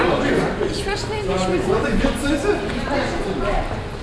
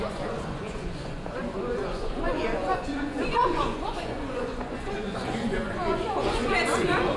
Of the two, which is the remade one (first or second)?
second